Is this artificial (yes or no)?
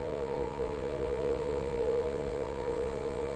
yes